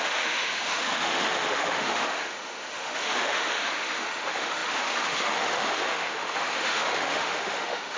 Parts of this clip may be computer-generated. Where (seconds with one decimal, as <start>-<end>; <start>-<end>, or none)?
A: 0.0-8.0